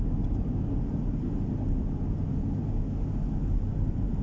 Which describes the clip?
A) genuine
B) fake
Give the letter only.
A